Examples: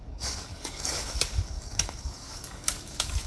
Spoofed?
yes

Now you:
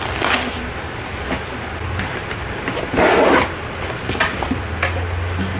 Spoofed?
no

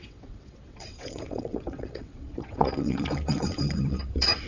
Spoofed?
yes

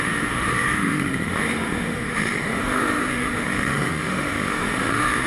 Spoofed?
yes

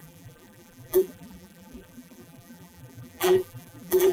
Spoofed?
yes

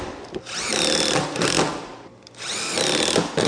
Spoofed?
no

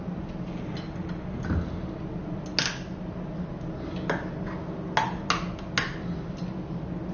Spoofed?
no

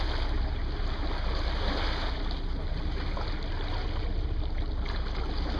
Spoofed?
no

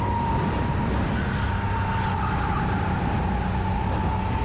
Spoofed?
no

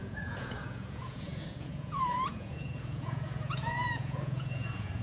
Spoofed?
yes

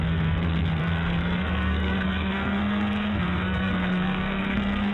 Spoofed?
yes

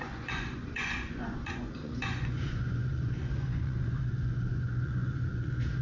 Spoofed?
yes